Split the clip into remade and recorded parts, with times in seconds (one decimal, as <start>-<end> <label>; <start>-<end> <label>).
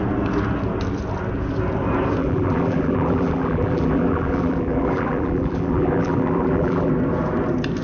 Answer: 0.0-2.2 recorded; 2.2-6.9 remade; 6.9-7.8 recorded